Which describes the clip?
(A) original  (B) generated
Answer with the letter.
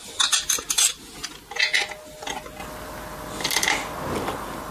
A